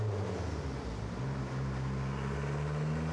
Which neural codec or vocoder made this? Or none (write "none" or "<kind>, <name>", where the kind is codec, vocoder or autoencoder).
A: none